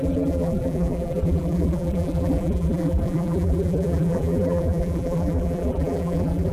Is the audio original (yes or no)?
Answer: no